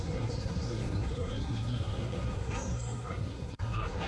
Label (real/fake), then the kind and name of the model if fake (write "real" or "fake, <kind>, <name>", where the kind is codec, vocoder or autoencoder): fake, codec, SNAC